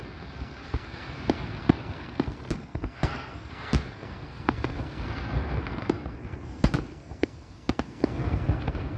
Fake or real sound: fake